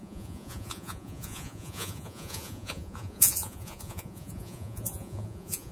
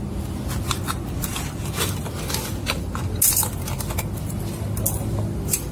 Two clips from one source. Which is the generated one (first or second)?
first